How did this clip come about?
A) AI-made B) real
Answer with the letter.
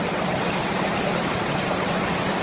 B